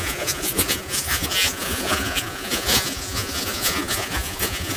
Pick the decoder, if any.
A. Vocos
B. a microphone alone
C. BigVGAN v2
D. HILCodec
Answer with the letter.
A